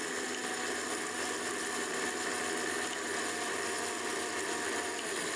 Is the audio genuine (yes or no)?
yes